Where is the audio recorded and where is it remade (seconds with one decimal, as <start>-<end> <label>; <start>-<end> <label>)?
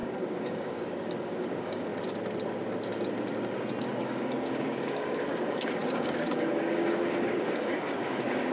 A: 0.0-1.9 remade; 1.9-3.8 recorded; 3.8-8.5 remade